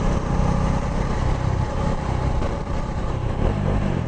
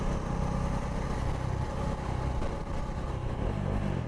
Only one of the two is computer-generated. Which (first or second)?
first